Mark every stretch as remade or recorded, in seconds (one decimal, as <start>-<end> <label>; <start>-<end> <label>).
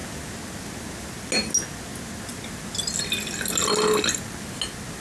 0.0-5.0 recorded